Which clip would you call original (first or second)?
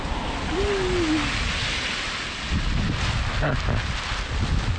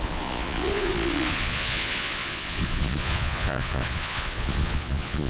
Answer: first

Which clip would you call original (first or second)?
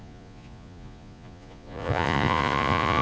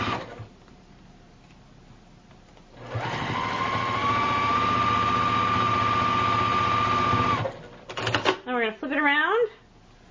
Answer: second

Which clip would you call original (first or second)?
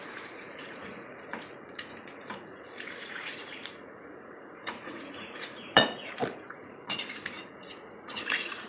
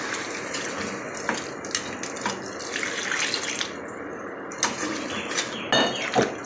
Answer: second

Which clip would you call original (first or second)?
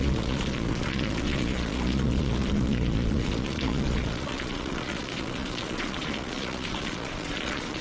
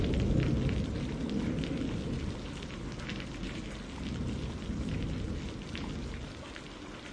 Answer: second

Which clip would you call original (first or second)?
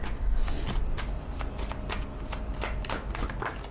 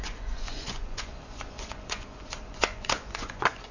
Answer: first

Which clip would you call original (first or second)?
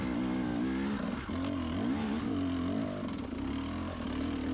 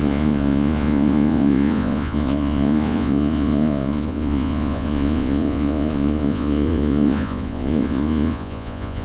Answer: first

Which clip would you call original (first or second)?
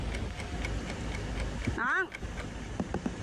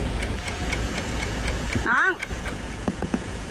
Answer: first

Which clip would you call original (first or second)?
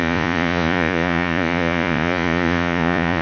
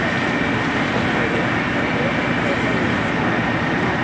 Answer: second